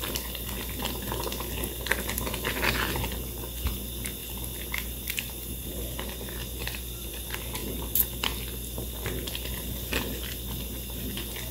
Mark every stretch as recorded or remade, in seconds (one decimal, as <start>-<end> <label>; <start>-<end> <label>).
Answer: 0.0-11.5 recorded